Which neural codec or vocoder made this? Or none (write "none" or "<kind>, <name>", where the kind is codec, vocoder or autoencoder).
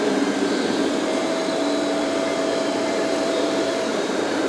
vocoder, BigVGAN v2